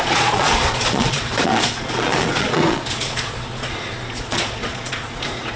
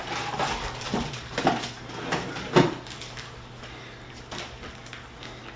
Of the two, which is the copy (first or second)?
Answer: first